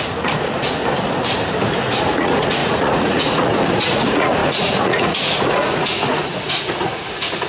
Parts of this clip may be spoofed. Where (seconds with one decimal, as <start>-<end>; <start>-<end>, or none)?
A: 0.0-0.8; 1.8-7.5